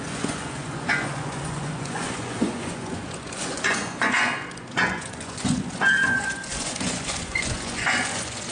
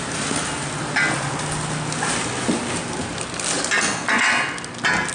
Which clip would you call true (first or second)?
second